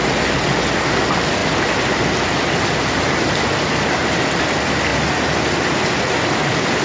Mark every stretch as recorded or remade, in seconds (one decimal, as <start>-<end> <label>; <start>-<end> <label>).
0.0-6.8 recorded